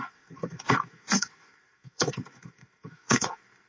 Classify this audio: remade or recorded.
remade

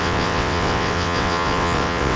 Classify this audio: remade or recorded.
remade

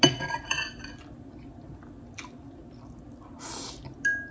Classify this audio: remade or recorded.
recorded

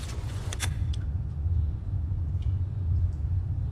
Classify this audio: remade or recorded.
remade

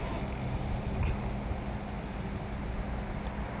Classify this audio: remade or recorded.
recorded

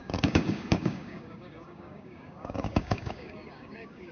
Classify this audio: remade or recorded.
remade